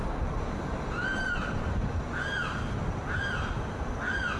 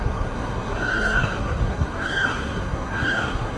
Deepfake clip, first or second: second